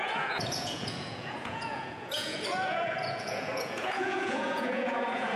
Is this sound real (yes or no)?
no